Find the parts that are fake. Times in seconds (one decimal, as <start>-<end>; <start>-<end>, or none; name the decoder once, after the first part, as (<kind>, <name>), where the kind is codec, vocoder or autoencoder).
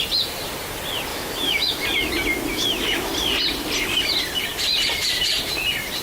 1.1-1.8 (autoencoder, DAC-VAE); 2.5-3.1